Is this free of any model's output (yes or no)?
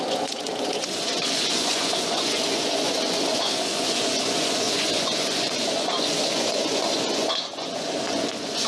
no